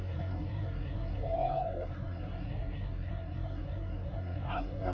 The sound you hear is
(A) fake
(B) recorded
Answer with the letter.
A